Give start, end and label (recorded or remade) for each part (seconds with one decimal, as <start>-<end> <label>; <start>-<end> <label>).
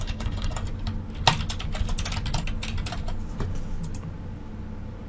0.0-0.6 remade; 0.6-5.1 recorded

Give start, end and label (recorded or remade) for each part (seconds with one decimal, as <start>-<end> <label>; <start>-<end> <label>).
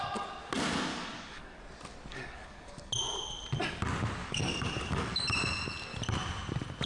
0.0-0.9 recorded; 0.9-1.6 remade; 1.6-2.1 recorded; 2.1-2.9 remade; 2.9-4.2 recorded; 4.2-5.2 remade; 5.2-6.8 recorded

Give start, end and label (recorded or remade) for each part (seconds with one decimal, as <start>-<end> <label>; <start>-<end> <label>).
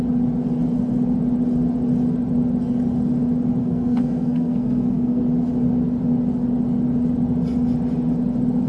0.0-3.6 recorded; 3.6-5.2 remade; 5.2-8.7 recorded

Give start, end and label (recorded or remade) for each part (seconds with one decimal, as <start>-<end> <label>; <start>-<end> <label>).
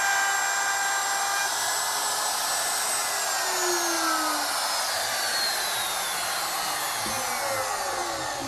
0.0-8.5 recorded